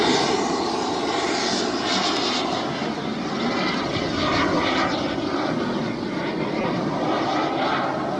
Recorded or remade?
recorded